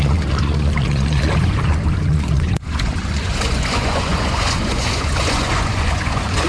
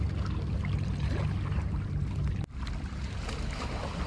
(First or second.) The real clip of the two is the second